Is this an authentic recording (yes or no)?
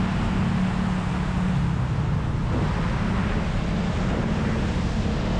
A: yes